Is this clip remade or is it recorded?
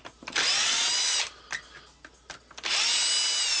recorded